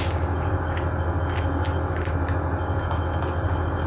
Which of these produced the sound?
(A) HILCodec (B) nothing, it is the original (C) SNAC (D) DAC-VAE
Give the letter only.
B